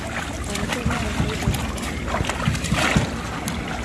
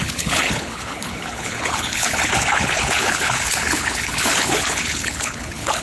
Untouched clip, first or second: first